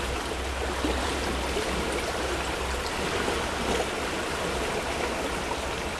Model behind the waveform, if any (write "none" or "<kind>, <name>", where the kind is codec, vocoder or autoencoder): none